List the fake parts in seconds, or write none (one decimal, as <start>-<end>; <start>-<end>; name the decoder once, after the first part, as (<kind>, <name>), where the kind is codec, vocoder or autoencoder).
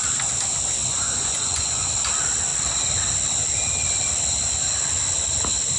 0.9-1.9 (vocoder, Vocos)